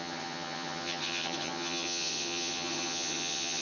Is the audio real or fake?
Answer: fake